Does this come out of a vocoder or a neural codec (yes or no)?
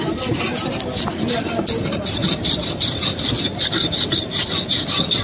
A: no